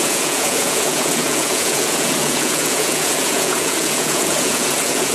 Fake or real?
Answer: fake